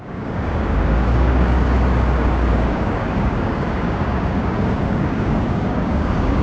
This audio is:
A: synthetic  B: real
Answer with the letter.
A